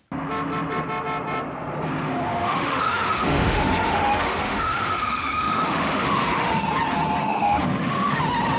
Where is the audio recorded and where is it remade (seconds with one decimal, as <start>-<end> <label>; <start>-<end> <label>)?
0.0-2.3 recorded; 2.3-6.6 remade; 6.6-7.2 recorded; 7.2-8.2 remade; 8.2-8.6 recorded